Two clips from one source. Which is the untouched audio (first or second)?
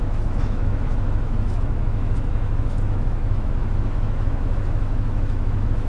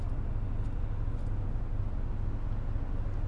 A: second